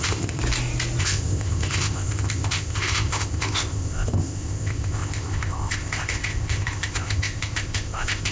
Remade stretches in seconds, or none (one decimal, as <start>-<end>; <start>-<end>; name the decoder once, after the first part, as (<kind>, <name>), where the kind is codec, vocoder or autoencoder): 0.0-0.4 (codec, ZipCodec); 1.0-8.3